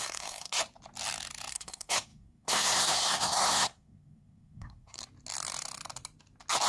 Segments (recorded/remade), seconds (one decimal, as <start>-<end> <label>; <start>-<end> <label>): 0.0-0.6 remade; 0.6-1.5 recorded; 1.5-5.0 remade; 5.0-6.7 recorded